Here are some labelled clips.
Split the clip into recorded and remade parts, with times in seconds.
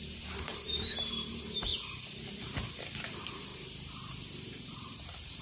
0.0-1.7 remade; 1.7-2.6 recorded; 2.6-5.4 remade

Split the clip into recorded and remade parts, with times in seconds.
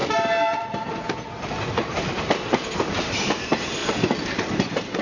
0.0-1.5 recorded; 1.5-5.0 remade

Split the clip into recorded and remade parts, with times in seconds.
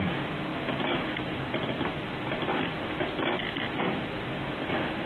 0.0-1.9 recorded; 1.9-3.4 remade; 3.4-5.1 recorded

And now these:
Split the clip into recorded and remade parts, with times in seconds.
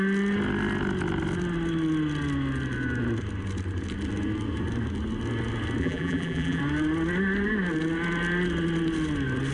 0.0-5.8 recorded; 5.8-6.6 remade; 6.6-9.5 recorded